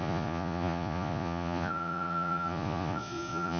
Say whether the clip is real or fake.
fake